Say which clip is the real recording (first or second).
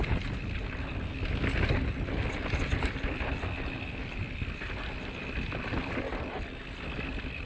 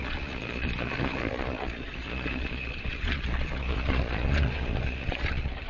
first